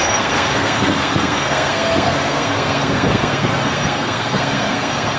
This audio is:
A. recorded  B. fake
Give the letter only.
B